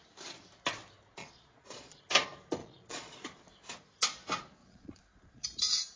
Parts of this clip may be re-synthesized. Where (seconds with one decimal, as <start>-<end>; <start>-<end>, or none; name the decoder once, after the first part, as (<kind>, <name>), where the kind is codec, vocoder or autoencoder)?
1.2-2.0 (vocoder, Vocos); 2.6-3.2; 4.6-5.6